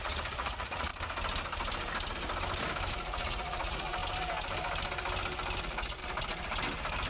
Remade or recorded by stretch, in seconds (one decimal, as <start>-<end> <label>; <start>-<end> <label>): 0.0-0.9 remade; 0.9-2.9 recorded; 2.9-4.0 remade; 4.0-5.6 recorded; 5.6-6.0 remade; 6.0-7.1 recorded